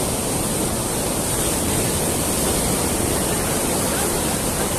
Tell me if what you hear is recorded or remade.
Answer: remade